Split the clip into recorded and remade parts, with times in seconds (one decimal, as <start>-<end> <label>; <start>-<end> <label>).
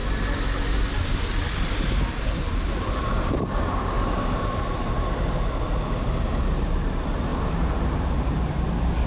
0.0-9.1 recorded